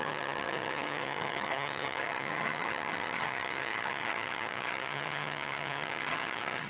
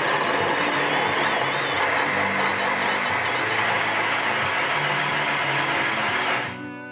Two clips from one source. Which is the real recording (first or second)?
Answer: second